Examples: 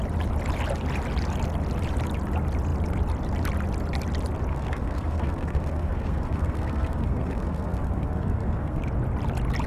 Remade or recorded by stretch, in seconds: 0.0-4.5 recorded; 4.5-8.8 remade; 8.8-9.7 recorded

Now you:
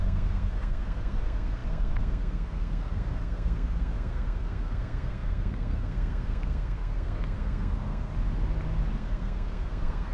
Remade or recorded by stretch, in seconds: 0.0-8.1 remade; 8.1-9.0 recorded; 9.0-10.1 remade